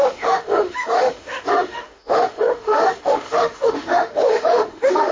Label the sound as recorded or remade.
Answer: remade